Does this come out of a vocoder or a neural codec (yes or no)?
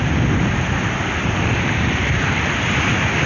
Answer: no